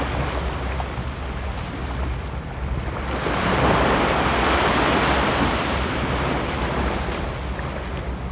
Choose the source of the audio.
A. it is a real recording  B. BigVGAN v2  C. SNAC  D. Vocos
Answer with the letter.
A